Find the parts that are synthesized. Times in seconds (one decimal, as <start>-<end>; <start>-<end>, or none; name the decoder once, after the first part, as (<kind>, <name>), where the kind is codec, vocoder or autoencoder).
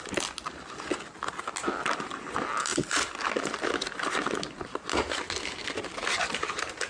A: none